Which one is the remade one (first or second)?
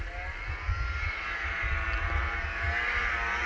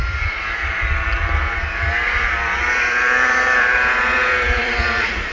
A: second